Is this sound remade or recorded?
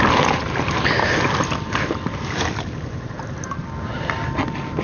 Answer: recorded